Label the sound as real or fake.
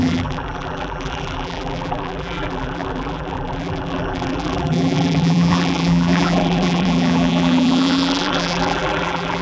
fake